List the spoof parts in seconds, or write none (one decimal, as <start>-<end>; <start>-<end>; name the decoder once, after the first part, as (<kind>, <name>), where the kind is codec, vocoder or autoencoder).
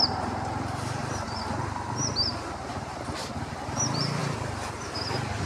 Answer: 0.0-5.5 (vocoder, BigVGAN v2)